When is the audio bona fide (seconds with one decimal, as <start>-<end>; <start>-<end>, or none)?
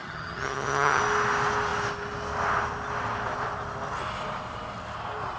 1.0-5.4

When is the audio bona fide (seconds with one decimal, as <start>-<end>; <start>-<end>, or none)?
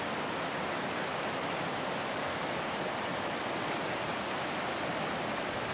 0.0-5.7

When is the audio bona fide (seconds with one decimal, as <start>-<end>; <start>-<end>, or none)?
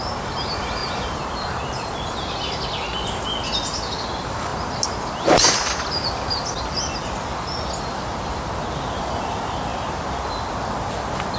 0.0-11.4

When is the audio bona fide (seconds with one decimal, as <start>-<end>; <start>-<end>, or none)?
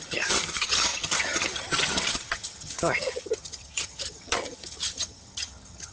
none